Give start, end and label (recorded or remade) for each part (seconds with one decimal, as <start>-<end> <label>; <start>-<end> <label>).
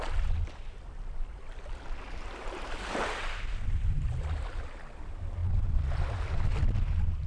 0.0-7.3 recorded